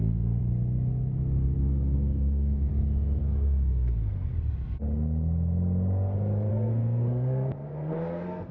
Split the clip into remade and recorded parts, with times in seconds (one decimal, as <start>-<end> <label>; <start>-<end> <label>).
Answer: 0.0-0.4 remade; 0.4-1.6 recorded; 1.6-2.7 remade; 2.7-3.2 recorded; 3.2-4.3 remade; 4.3-6.5 recorded; 6.5-8.5 remade